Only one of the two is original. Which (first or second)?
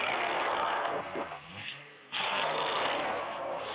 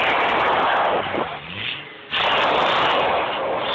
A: second